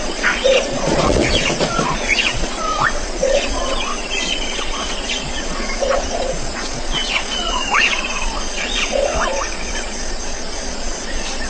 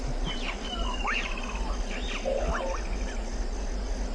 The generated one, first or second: first